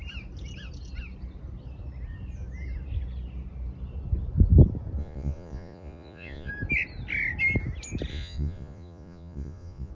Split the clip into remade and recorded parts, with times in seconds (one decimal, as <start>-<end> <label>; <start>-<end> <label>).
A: 0.0-5.0 recorded; 5.0-6.5 remade; 6.5-8.1 recorded; 8.1-9.9 remade